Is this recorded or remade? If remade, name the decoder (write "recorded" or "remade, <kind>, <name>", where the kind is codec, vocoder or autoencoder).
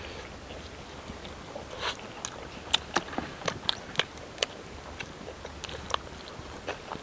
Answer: recorded